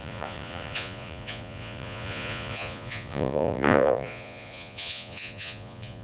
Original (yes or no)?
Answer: no